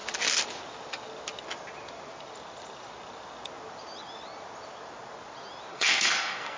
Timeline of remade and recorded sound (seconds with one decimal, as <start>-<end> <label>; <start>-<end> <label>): 0.0-5.7 recorded; 5.7-6.6 remade